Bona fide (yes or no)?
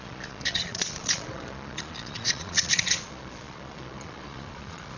no